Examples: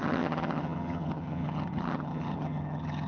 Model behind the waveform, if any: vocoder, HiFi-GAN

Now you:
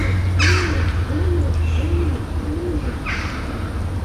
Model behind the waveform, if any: none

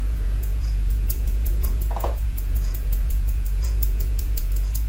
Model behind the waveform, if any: vocoder, Vocos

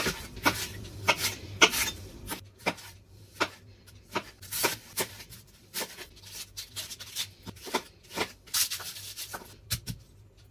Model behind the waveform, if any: vocoder, BigVGAN v2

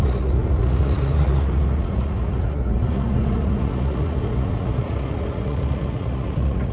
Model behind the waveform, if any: vocoder, Vocos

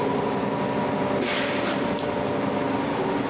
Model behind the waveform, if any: none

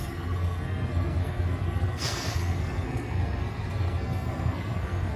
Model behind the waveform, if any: codec, SNAC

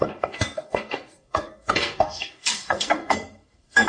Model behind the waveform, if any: codec, SNAC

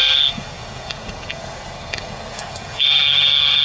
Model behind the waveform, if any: codec, SNAC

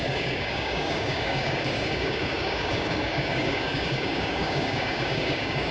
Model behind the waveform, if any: codec, DAC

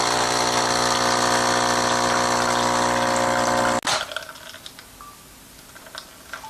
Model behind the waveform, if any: none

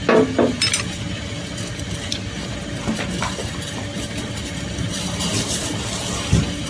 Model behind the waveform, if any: none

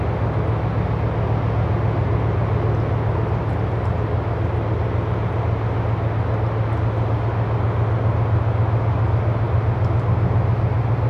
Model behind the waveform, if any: none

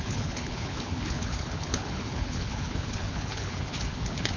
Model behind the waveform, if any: codec, HILCodec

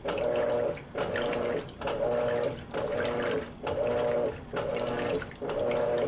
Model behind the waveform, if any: none